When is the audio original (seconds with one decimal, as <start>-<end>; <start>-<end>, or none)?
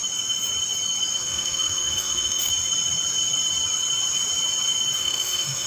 0.0-1.2; 2.5-5.0